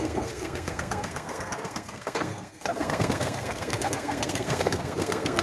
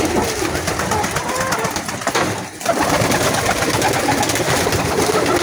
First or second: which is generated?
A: first